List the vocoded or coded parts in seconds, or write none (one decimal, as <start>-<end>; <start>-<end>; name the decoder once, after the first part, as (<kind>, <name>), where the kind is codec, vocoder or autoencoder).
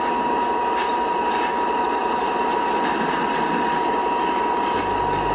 none